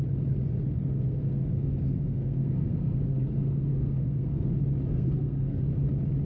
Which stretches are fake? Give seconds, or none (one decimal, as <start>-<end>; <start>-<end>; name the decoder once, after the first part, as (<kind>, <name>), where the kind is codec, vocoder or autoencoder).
0.8-4.5 (codec, SNAC); 4.9-5.6